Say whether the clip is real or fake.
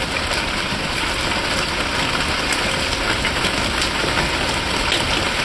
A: real